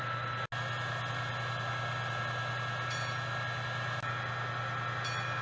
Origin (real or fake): real